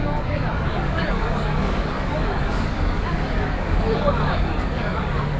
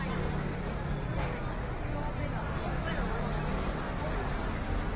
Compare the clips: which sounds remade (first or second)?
first